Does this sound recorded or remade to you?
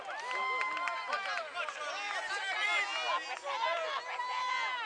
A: recorded